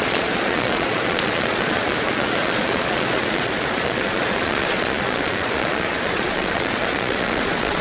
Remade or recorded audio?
remade